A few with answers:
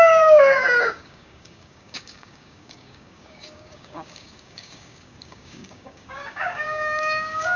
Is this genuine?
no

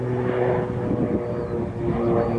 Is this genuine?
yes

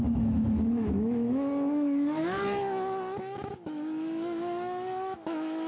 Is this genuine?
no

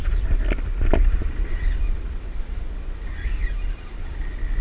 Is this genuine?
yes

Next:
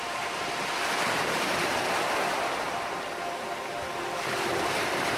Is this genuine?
yes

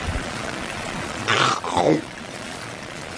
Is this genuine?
no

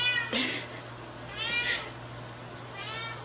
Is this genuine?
yes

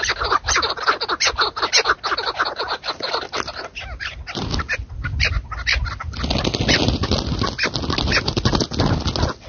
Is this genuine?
yes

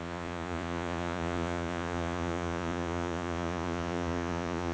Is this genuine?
no